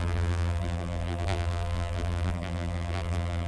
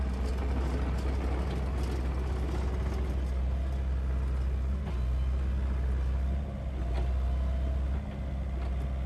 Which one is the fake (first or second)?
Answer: first